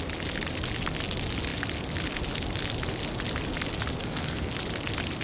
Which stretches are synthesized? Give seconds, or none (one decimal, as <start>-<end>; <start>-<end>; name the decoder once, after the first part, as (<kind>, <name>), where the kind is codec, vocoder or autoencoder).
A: 4.0-4.5 (codec, SNAC)